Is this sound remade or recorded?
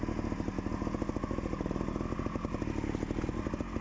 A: recorded